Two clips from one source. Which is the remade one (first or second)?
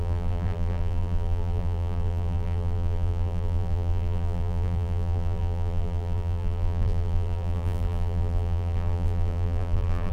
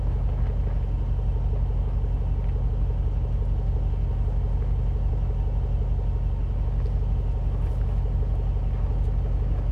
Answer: first